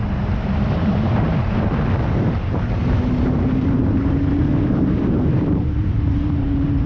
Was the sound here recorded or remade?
remade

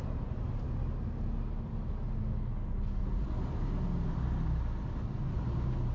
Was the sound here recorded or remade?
recorded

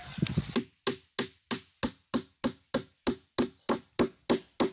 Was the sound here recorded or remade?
recorded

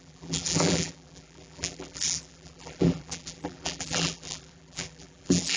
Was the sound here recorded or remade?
remade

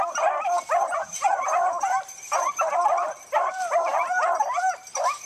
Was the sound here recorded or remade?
remade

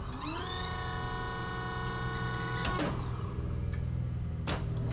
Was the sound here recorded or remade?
recorded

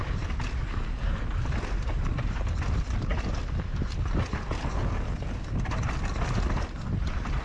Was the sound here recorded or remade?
recorded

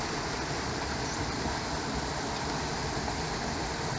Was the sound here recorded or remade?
recorded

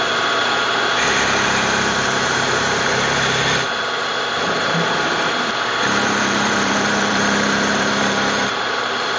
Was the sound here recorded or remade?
remade